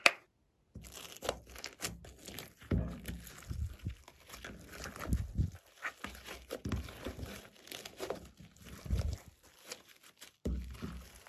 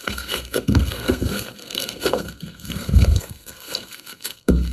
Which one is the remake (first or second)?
second